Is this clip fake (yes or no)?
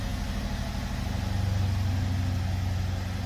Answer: no